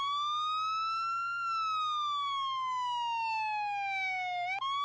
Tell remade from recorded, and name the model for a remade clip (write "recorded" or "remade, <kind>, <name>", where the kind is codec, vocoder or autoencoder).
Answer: recorded